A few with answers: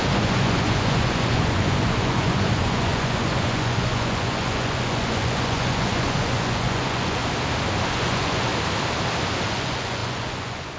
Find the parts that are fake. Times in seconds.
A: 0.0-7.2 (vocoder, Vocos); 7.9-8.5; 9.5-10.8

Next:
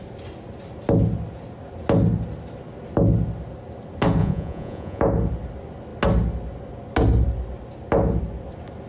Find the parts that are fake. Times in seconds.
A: 4.2-5.0 (vocoder, Vocos)

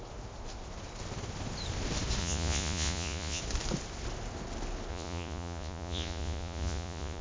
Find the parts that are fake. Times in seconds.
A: 2.2-3.4 (vocoder, Vocos); 4.9-7.2

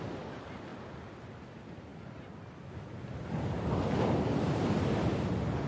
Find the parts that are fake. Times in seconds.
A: none

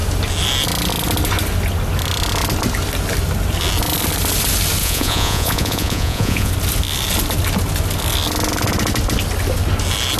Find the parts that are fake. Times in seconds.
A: 4.8-6.5 (vocoder, Vocos)

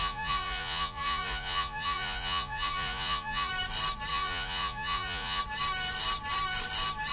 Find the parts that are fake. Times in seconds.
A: 0.0-3.5 (vocoder, Vocos); 4.1-5.4